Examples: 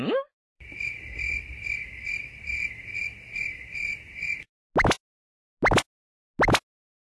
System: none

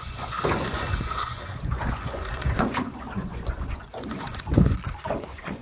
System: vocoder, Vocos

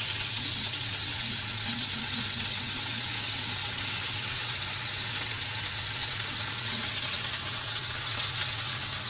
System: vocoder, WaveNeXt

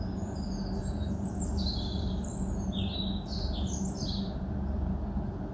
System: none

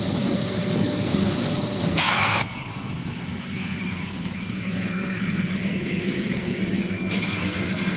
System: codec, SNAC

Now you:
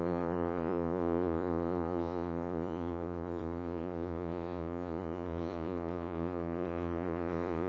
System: vocoder, Vocos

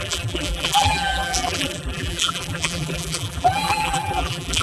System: vocoder, BigVGAN v2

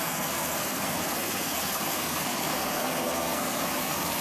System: codec, SNAC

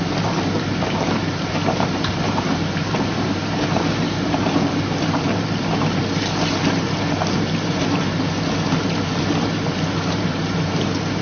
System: vocoder, BigVGAN v2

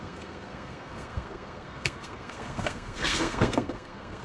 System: codec, SNAC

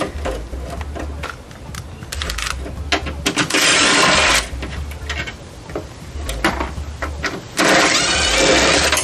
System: none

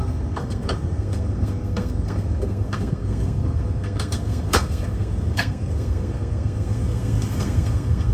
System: codec, SNAC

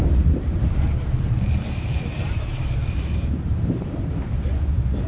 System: vocoder, BigVGAN v2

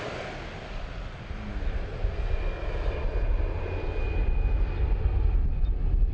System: none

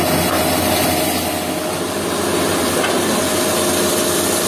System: none